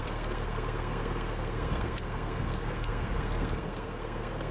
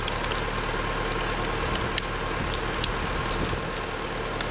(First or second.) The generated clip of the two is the first